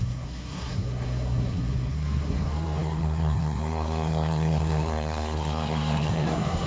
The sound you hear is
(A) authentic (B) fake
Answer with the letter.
B